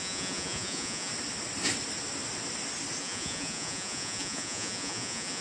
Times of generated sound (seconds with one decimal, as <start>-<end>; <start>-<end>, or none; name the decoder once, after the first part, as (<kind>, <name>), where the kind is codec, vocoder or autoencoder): 0.0-1.1 (vocoder, Vocos); 3.0-5.4